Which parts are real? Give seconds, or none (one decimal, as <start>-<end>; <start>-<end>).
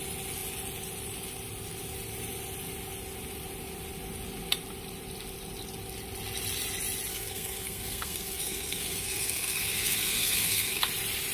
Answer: 0.0-7.1; 10.9-11.3